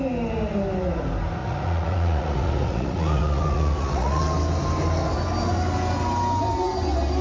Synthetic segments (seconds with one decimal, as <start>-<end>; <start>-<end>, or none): 1.4-4.2